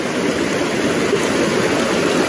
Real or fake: real